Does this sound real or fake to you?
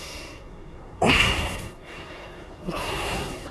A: fake